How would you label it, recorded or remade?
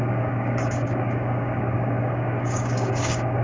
remade